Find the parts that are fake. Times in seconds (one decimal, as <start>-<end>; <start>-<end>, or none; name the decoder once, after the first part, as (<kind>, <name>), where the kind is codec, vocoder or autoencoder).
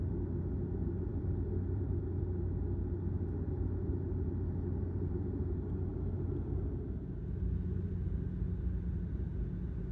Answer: 1.1-2.2 (vocoder, BigVGAN v2)